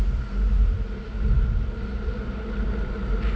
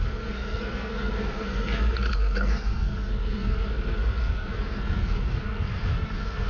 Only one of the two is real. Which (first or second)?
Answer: first